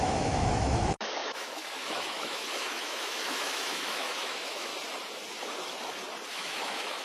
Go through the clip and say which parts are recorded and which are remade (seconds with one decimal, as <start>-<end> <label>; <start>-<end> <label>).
0.0-4.7 remade; 4.7-6.3 recorded; 6.3-7.0 remade